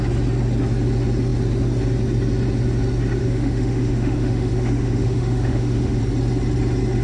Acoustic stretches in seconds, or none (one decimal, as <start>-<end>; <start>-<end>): 0.0-3.2; 6.0-7.0